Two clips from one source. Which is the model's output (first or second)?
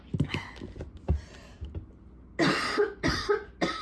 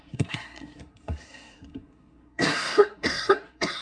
second